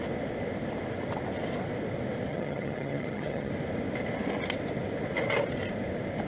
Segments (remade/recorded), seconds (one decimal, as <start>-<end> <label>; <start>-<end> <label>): 0.0-2.3 recorded; 2.3-3.5 remade; 3.5-6.3 recorded